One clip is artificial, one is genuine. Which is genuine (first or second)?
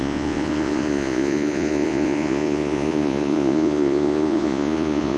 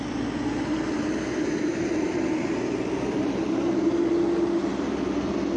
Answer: second